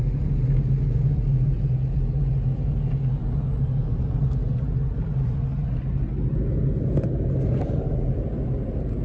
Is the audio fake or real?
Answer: real